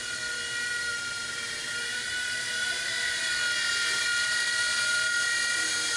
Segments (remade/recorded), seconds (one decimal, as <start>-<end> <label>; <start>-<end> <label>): 0.0-3.3 remade; 3.3-3.9 recorded; 3.9-6.0 remade